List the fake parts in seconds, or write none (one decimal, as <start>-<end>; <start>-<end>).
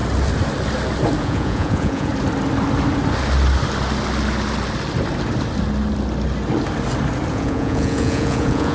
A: 1.2-2.1; 7.3-8.7